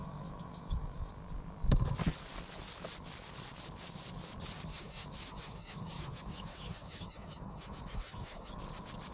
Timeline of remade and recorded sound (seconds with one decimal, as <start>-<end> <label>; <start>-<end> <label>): 0.0-1.1 remade; 1.1-4.7 recorded; 4.7-8.6 remade; 8.6-9.1 recorded

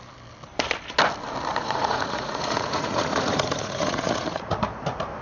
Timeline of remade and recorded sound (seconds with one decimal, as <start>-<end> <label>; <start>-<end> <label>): 0.0-1.5 recorded; 1.5-4.6 remade; 4.6-5.2 recorded

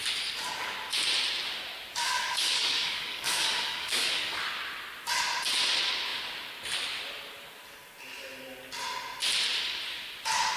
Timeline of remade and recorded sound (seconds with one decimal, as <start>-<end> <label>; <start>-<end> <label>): 0.0-2.0 recorded; 2.0-4.4 remade; 4.4-10.6 recorded

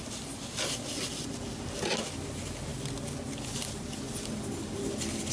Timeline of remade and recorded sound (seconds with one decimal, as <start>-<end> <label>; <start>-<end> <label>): 0.0-5.3 recorded

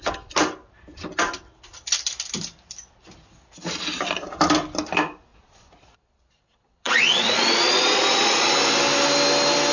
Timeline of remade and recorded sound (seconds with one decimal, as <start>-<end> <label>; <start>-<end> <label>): 0.0-5.3 recorded; 5.3-8.5 remade; 8.5-9.7 recorded

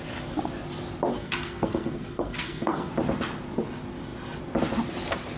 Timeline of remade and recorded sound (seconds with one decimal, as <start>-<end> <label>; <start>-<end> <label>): 0.0-1.1 recorded; 1.1-2.9 remade; 2.9-5.4 recorded

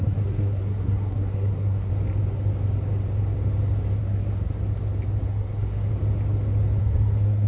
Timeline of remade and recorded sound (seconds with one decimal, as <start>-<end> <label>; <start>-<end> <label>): 0.0-1.9 remade; 1.9-4.0 recorded; 4.0-4.5 remade; 4.5-5.3 recorded; 5.3-5.9 remade; 5.9-6.8 recorded; 6.8-7.5 remade

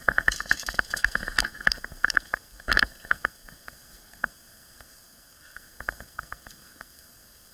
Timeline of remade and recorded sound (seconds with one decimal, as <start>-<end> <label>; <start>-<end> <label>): 0.0-7.5 remade